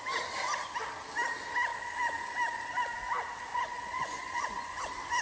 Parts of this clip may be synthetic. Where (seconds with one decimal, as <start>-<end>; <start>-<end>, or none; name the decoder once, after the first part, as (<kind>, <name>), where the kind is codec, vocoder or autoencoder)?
3.5-4.8 (vocoder, Vocos)